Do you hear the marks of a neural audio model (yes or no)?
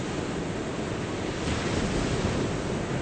no